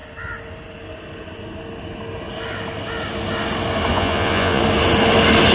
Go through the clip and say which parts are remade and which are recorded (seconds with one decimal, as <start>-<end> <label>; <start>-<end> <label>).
0.0-3.9 recorded; 3.9-4.6 remade; 4.6-5.5 recorded